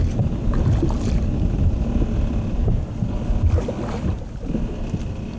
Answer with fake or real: real